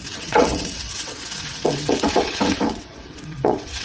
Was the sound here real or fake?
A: fake